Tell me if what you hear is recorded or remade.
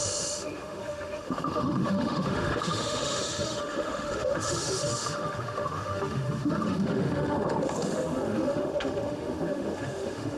remade